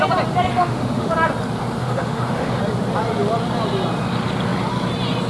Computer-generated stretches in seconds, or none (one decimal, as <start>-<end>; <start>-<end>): 0.5-1.1; 1.8-2.6